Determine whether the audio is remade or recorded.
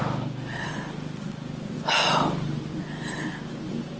recorded